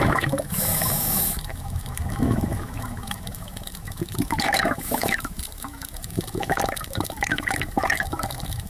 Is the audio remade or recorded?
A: remade